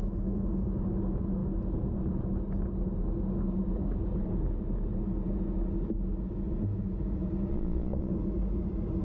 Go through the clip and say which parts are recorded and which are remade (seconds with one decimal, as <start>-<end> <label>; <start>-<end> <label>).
0.0-7.5 recorded; 7.5-8.1 remade; 8.1-9.0 recorded